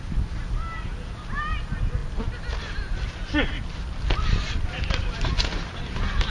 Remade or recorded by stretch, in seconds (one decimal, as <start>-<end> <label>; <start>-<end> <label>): 0.0-6.3 recorded